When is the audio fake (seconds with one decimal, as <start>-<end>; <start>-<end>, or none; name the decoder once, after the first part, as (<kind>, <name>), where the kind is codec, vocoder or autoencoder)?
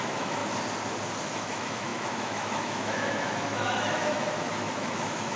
0.0-0.4 (autoencoder, DAC-VAE); 1.2-5.4